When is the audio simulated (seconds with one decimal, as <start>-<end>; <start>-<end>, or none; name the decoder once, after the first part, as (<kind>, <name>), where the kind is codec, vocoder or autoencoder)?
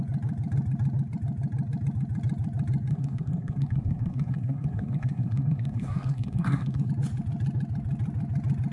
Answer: 2.9-6.9 (codec, SNAC)